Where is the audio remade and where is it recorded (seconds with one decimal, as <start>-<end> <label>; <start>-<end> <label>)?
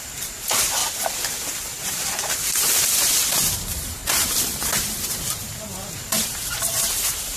0.0-0.8 remade; 0.8-1.6 recorded; 1.6-4.0 remade; 4.0-5.9 recorded; 5.9-7.4 remade